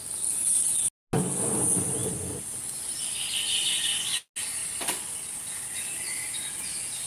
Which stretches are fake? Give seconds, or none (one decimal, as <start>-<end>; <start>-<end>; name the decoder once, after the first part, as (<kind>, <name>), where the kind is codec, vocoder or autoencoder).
2.0-4.1 (vocoder, BigVGAN v2); 4.6-5.3